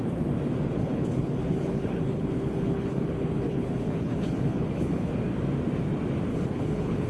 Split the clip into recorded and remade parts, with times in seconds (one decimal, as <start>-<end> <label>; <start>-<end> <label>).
0.0-0.8 recorded; 0.8-5.1 remade; 5.1-6.3 recorded; 6.3-7.1 remade